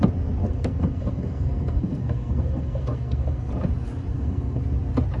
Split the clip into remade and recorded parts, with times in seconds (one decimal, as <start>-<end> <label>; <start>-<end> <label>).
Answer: 0.0-0.4 recorded; 0.4-3.5 remade; 3.5-4.1 recorded; 4.1-4.6 remade; 4.6-5.2 recorded